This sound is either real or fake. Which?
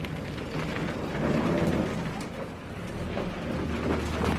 real